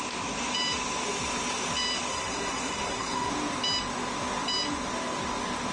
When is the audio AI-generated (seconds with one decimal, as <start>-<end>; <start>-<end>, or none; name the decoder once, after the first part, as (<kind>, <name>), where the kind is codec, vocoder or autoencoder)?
2.1-3.3 (codec, SNAC)